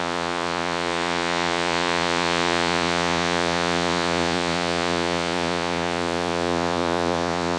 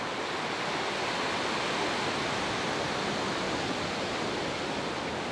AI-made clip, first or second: first